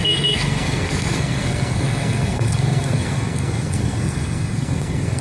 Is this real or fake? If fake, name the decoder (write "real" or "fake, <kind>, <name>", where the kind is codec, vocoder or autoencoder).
fake, codec, SNAC